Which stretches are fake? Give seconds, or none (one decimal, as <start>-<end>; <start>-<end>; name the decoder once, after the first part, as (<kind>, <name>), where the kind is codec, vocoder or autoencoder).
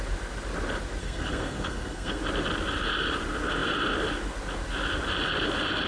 1.0-2.2 (codec, SNAC)